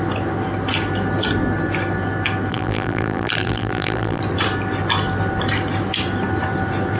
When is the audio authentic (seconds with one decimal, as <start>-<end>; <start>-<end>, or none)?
0.0-2.5; 4.2-7.0